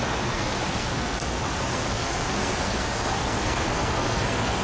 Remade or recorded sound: remade